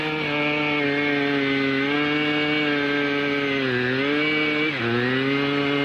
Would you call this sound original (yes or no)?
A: yes